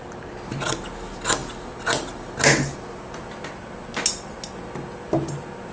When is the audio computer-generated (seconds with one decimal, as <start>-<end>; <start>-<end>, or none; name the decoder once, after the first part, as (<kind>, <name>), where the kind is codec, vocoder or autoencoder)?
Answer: none